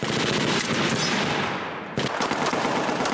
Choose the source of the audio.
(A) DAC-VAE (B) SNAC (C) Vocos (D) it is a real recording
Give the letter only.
D